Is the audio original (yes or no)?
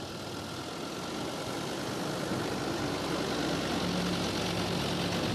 yes